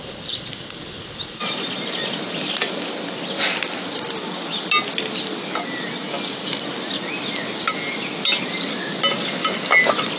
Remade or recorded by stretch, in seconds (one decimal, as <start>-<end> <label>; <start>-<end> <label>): 0.0-10.2 recorded